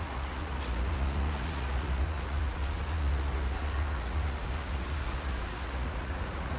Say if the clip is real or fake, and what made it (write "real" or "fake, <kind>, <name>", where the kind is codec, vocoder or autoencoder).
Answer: fake, vocoder, Vocos